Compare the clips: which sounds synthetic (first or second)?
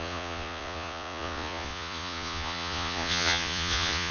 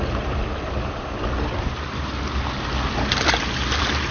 first